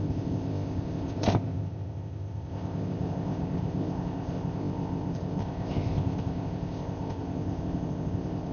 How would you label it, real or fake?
fake